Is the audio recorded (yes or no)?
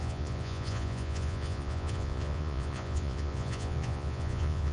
no